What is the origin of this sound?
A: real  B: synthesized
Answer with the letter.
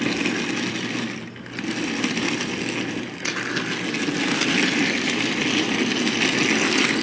A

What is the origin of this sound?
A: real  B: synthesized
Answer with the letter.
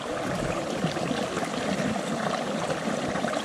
A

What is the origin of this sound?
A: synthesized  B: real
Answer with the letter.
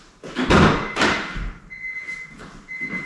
B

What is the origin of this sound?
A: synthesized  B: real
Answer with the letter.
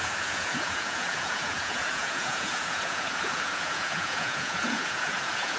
A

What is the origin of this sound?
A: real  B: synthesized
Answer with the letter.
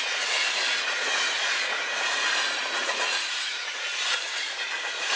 B